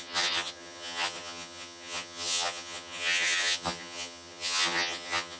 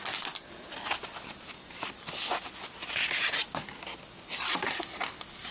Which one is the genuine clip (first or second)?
second